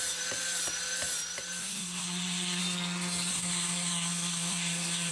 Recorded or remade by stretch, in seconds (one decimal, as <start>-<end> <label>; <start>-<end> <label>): 0.0-1.6 recorded; 1.6-2.6 remade; 2.6-3.3 recorded; 3.3-5.1 remade